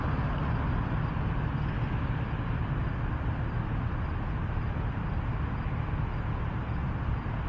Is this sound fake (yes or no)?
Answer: no